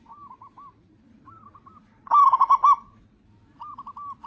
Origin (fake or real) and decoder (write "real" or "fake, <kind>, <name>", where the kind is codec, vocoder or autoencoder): fake, vocoder, BigVGAN v2